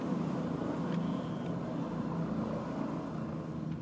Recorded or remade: recorded